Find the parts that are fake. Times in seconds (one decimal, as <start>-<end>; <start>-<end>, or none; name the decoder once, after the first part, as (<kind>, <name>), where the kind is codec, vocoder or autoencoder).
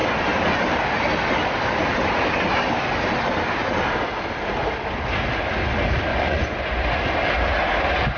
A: 6.1-6.9 (vocoder, Vocos)